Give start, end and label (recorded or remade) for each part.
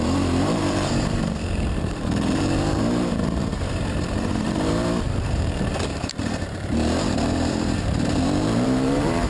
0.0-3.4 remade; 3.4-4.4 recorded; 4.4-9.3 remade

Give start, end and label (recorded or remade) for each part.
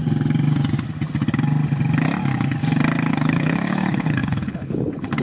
0.0-3.1 recorded; 3.1-5.2 remade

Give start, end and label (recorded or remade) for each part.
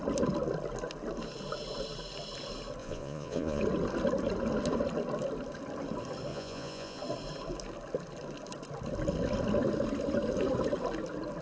0.0-2.8 recorded; 2.8-3.6 remade; 3.6-6.3 recorded; 6.3-7.0 remade; 7.0-11.4 recorded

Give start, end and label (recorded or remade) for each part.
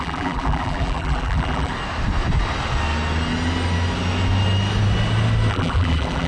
0.0-1.7 remade; 1.7-5.5 recorded; 5.5-6.3 remade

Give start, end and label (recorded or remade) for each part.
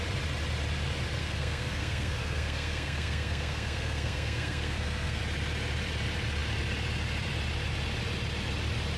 0.0-1.2 recorded; 1.2-5.2 remade; 5.2-9.0 recorded